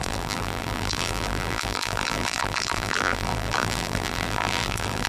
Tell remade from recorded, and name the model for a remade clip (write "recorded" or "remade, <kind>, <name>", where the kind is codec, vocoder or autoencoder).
remade, vocoder, BigVGAN v2